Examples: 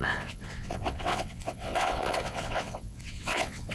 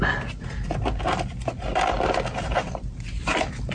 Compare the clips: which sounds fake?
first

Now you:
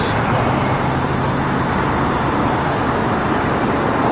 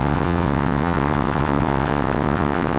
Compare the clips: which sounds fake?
second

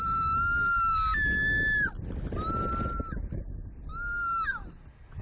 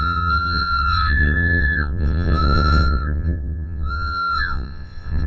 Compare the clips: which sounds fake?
second